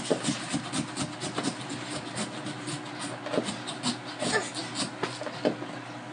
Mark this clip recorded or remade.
recorded